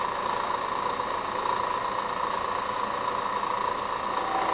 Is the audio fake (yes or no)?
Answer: no